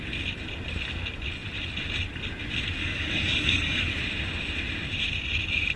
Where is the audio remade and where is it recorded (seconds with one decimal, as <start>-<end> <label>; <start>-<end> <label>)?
0.0-2.8 recorded; 2.8-4.0 remade; 4.0-5.8 recorded